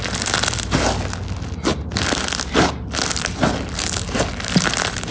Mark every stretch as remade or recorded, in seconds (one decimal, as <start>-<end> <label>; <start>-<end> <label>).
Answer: 0.0-5.1 recorded